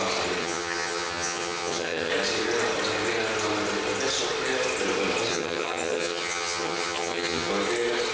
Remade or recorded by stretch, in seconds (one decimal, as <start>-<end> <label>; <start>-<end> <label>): 0.0-0.4 recorded; 0.4-2.1 remade; 2.1-5.3 recorded; 5.3-7.5 remade; 7.5-8.1 recorded